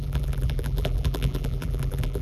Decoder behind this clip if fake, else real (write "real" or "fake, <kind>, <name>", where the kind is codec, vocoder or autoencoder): fake, vocoder, BigVGAN v2